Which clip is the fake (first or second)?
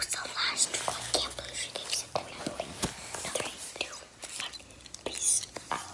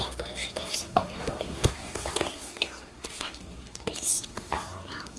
second